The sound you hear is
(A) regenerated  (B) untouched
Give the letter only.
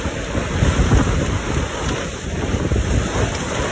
B